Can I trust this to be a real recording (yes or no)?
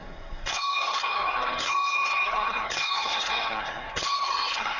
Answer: no